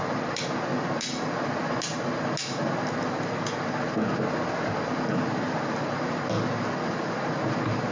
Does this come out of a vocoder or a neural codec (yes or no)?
no